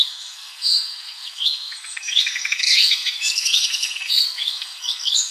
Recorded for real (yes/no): no